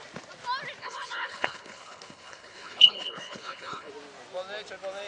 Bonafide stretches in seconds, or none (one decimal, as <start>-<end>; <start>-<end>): 0.0-0.8; 3.9-5.1